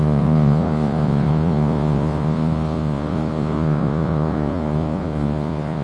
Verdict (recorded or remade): remade